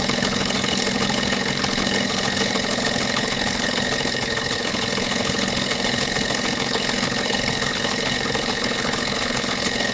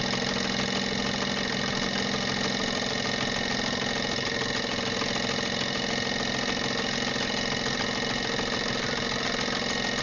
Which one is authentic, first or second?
second